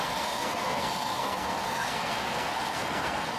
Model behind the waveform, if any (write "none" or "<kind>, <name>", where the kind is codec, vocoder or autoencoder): codec, SNAC